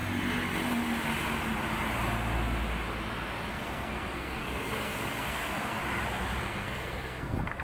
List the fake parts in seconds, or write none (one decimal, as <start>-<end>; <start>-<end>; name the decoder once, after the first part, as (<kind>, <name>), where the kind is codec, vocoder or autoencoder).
3.5-5.8 (codec, SNAC); 6.4-7.6